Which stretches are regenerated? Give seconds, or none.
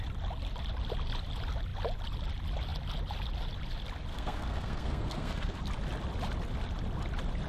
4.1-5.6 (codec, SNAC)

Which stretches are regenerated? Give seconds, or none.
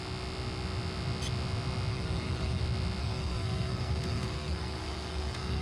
1.9-2.6 (codec, SNAC); 3.0-5.6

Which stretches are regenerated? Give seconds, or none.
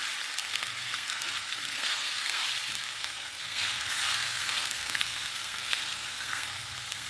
0.4-2.4 (codec, SNAC); 2.8-7.1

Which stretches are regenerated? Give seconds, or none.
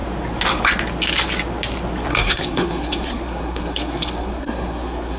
2.1-5.2 (codec, SNAC)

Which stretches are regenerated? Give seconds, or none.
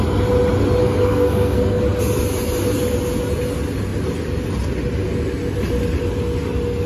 0.8-1.8 (codec, SNAC)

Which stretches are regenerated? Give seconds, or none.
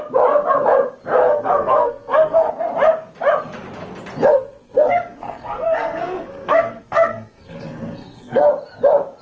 1.2-2.5 (codec, SNAC); 4.3-8.5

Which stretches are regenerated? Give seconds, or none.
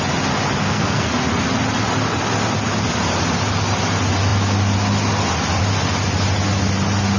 0.6-1.1 (codec, SNAC)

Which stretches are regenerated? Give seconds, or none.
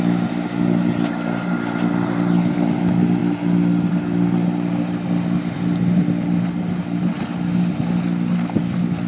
none